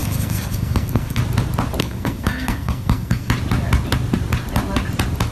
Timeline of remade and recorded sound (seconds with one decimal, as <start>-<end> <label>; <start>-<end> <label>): 0.0-1.2 remade; 1.2-1.8 recorded; 1.8-3.3 remade; 3.3-5.3 recorded